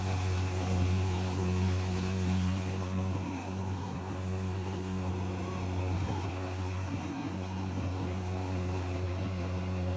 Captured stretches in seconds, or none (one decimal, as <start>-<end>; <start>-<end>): 5.1-5.8